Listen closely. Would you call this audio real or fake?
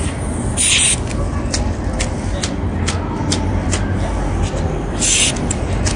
real